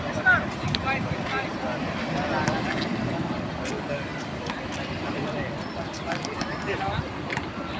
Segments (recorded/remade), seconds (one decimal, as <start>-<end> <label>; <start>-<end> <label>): 0.0-4.1 recorded; 4.1-5.5 remade; 5.5-7.8 recorded

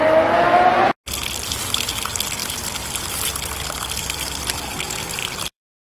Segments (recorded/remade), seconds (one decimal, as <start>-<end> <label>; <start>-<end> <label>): 0.0-5.2 recorded; 5.2-5.9 remade

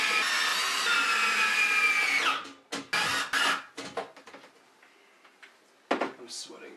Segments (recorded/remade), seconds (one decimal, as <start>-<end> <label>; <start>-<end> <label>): 0.0-6.8 recorded

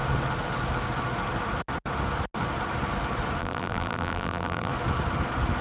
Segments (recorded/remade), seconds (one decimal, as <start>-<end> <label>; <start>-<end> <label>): 0.0-3.4 recorded; 3.4-4.7 remade; 4.7-5.6 recorded

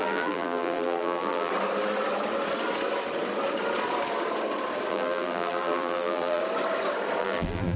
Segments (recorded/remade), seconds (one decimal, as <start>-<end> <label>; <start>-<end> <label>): 0.0-1.5 remade; 1.5-4.9 recorded; 4.9-6.4 remade; 6.4-7.2 recorded; 7.2-7.8 remade